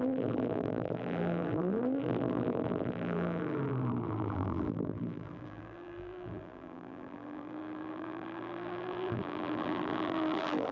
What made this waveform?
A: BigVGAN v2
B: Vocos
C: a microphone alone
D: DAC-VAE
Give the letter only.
A